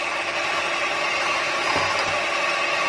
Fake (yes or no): no